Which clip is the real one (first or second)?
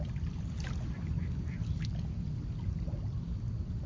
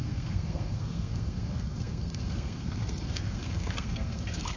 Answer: first